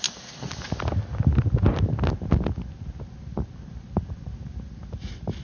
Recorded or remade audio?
recorded